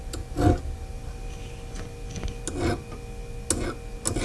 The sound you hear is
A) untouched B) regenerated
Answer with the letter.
A